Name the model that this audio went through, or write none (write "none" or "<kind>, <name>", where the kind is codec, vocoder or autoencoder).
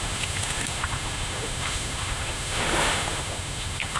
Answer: autoencoder, DAC-VAE